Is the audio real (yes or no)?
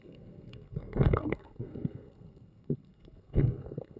no